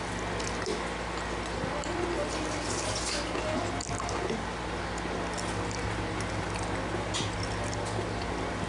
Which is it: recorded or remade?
recorded